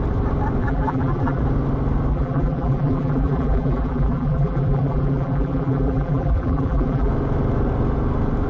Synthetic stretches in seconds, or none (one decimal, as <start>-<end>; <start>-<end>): 0.6-1.4; 2.1-7.1